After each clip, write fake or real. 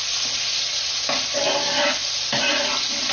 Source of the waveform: real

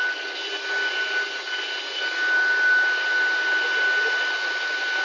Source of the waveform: real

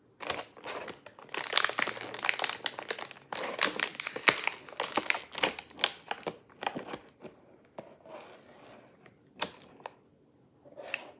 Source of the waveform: real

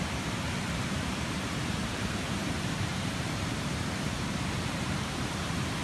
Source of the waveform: fake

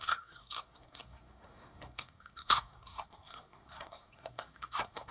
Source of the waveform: fake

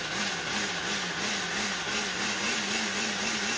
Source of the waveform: real